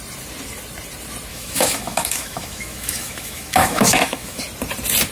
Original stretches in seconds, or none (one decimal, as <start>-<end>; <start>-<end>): 0.0-1.3; 4.4-5.1